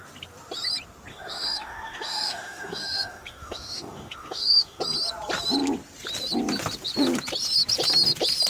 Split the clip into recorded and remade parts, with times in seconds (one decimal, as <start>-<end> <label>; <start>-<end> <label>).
0.0-1.1 recorded; 1.1-4.8 remade; 4.8-8.5 recorded